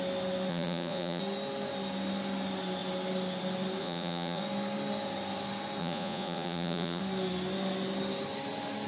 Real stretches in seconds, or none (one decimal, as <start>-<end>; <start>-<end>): 0.0-0.5; 1.2-3.8; 4.4-5.8; 7.0-8.9